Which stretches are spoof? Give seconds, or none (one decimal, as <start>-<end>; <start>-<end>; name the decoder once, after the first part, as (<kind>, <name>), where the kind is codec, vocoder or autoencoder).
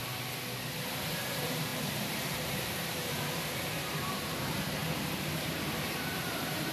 0.9-6.7 (vocoder, BigVGAN v2)